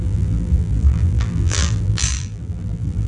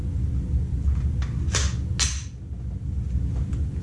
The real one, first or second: second